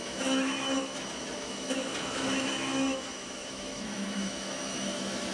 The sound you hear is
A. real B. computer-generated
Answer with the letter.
B